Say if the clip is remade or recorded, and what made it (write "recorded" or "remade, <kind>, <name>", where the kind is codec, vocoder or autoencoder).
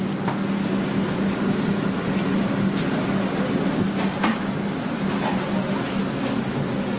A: recorded